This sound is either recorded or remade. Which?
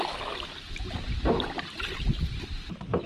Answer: recorded